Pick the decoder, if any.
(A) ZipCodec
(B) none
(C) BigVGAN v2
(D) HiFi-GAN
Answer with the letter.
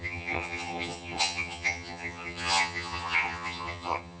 D